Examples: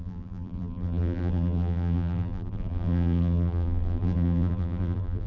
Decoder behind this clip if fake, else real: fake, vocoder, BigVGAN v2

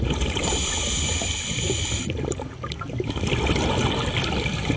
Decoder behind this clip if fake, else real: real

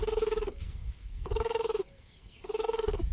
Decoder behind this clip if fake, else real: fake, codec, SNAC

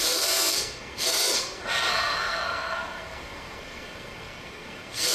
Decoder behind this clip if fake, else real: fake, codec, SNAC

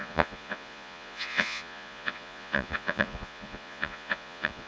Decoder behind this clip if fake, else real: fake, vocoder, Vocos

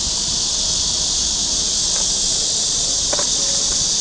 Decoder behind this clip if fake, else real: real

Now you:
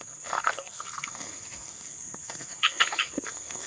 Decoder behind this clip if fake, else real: fake, codec, SNAC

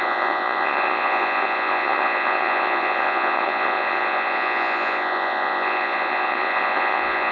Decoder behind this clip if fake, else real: fake, vocoder, Vocos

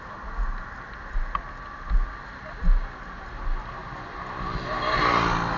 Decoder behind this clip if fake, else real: real